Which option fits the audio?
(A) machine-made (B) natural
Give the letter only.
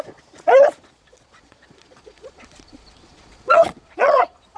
A